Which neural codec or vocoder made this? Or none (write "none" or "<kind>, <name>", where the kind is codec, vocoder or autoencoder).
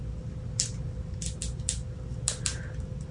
none